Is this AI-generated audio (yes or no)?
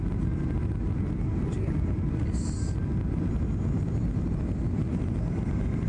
no